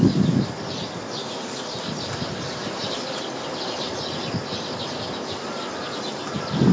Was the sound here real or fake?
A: real